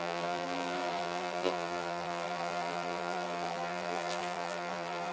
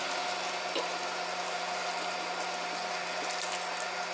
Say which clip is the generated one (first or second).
first